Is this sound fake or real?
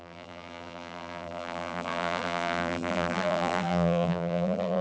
fake